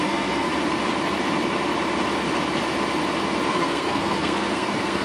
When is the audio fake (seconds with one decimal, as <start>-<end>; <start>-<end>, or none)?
0.0-0.5; 3.5-5.0